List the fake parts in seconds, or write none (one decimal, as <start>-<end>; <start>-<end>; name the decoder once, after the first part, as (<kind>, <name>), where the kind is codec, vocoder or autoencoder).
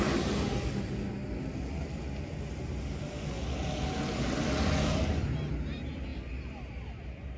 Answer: none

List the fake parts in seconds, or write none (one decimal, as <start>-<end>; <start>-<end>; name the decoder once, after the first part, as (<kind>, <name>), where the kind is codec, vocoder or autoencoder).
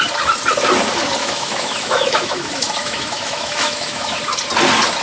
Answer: 1.2-4.2 (autoencoder, DAC-VAE)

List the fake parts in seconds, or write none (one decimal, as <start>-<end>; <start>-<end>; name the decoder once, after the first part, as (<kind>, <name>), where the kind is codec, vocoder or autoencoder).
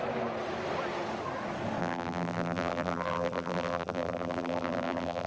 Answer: 1.8-5.3 (vocoder, BigVGAN v2)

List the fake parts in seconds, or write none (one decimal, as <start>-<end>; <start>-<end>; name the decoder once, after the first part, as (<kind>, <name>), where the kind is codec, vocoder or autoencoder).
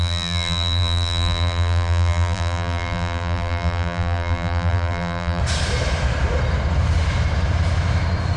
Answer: 0.0-5.4 (vocoder, BigVGAN v2)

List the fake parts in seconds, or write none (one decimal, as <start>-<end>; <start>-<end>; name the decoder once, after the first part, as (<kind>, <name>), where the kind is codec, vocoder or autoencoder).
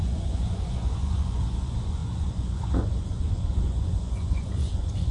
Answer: 0.0-5.1 (vocoder, Vocos)